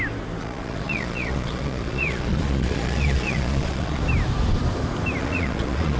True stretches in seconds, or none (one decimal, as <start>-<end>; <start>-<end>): 0.0-0.4; 4.0-5.2